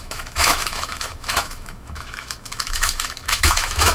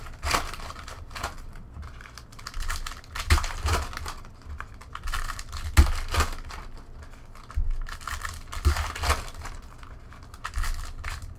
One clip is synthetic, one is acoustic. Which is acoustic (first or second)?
second